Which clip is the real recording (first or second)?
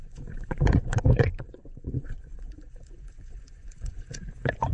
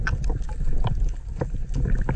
second